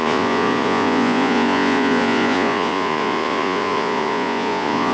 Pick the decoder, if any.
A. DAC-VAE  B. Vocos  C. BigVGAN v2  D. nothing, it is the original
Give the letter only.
B